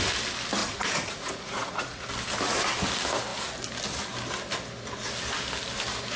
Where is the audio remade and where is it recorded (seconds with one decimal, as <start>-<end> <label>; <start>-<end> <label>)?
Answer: 0.0-0.6 recorded; 0.6-2.1 remade; 2.1-6.2 recorded